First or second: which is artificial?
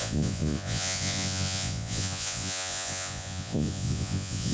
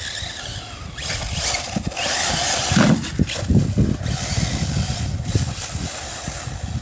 first